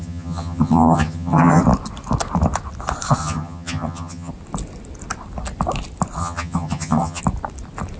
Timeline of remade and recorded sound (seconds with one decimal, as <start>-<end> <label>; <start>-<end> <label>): 0.0-1.6 remade; 1.6-3.2 recorded; 3.2-4.3 remade; 4.3-6.2 recorded; 6.2-7.2 remade; 7.2-8.0 recorded